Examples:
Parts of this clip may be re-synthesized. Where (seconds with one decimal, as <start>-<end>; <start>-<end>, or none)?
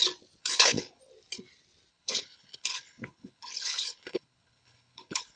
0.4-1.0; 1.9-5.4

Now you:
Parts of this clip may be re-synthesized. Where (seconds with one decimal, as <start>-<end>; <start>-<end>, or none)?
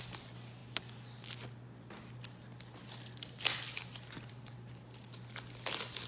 none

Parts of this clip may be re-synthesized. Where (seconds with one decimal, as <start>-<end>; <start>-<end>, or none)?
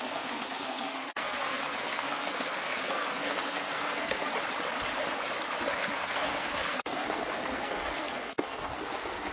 0.0-4.3; 5.7-9.3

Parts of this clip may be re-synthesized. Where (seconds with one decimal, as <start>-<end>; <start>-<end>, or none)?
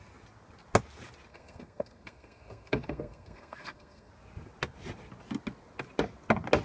1.3-4.1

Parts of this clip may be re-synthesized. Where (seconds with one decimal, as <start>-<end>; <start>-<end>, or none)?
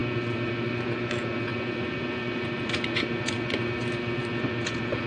0.0-5.1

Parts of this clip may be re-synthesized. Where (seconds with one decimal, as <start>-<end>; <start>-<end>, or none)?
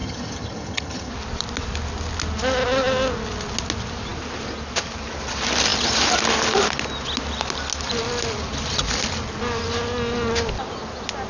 0.0-1.1